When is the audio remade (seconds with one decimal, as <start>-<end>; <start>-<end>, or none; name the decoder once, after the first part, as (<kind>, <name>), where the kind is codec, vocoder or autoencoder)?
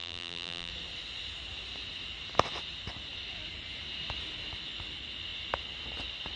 0.0-0.7 (vocoder, BigVGAN v2)